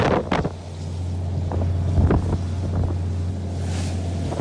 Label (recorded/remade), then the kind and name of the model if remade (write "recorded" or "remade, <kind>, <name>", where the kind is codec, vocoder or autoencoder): recorded